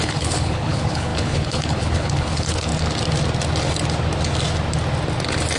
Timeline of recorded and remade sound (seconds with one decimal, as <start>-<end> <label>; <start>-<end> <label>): 0.0-2.7 remade; 2.7-5.6 recorded

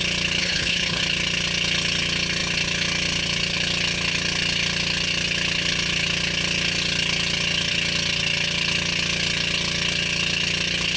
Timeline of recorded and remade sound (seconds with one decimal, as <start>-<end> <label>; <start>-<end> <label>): 0.0-0.4 recorded; 0.4-1.0 remade; 1.0-11.0 recorded

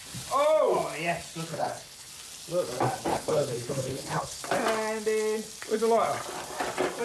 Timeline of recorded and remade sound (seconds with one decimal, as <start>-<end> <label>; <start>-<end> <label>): 0.0-1.5 recorded; 1.5-2.1 remade; 2.1-3.1 recorded; 3.1-4.4 remade; 4.4-7.0 recorded

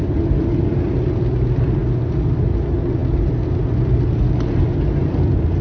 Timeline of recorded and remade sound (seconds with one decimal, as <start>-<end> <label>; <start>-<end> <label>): 0.0-5.6 recorded

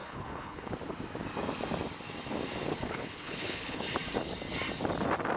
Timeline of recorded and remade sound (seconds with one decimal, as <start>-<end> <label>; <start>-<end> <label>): 0.0-0.7 remade; 0.7-2.7 recorded; 2.7-3.8 remade; 3.8-5.4 recorded

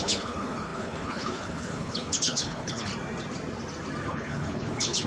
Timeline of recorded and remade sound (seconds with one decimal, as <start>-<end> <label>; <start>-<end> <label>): 0.0-2.9 remade; 2.9-4.1 recorded; 4.1-5.1 remade